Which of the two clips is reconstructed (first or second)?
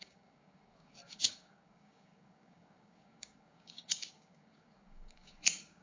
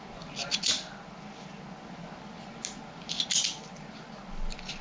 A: first